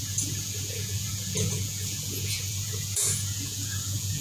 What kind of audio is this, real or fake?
fake